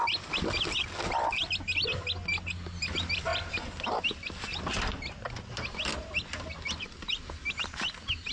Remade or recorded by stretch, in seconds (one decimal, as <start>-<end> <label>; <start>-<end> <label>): 0.0-8.3 recorded